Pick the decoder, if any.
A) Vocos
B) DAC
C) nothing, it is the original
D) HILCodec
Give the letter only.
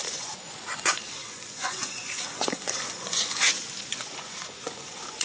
A